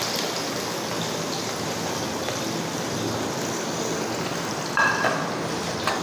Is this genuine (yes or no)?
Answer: yes